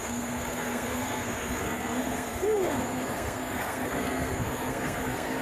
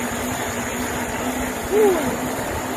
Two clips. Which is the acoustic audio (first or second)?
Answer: second